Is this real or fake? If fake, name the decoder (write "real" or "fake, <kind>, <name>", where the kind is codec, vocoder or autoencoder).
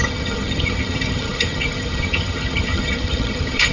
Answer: fake, vocoder, HiFi-GAN